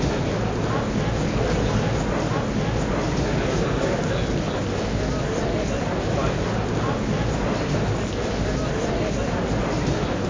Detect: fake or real real